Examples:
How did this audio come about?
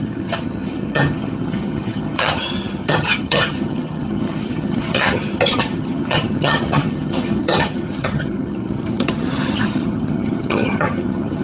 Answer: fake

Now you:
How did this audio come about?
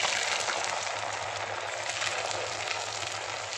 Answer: real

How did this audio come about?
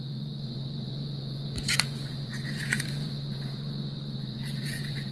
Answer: fake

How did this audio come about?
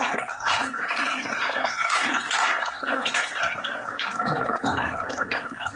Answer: fake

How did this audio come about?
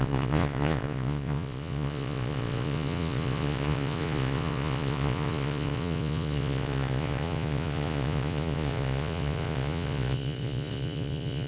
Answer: fake